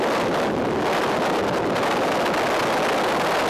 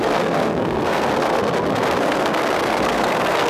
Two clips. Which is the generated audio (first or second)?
second